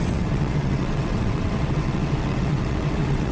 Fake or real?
fake